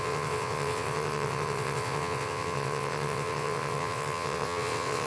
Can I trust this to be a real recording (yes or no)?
no